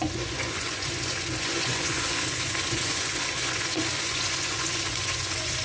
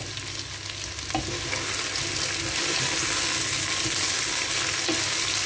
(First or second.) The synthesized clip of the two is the first